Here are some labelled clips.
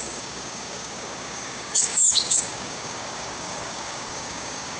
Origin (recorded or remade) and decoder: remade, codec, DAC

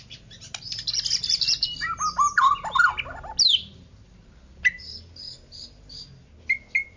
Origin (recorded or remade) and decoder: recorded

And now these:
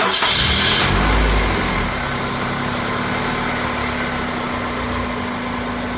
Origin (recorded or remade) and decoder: recorded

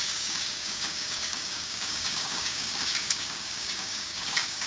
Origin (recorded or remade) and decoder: remade, codec, DAC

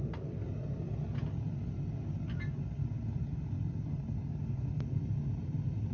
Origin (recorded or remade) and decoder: recorded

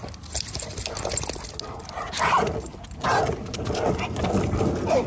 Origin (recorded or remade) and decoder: recorded